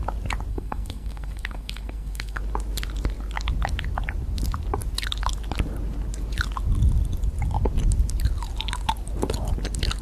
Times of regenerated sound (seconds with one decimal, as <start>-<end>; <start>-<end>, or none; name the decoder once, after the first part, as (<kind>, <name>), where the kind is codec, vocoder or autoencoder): 0.5-2.4 (codec, SNAC)